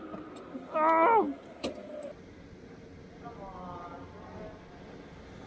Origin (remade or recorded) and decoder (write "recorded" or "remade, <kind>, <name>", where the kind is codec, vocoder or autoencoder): recorded